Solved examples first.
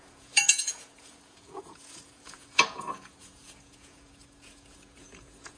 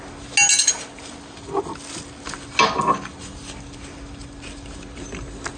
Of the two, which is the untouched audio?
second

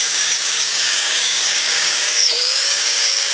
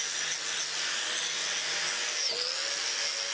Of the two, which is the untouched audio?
second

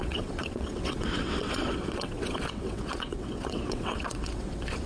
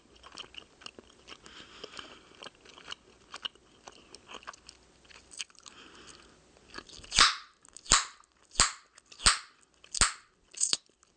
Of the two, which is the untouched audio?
second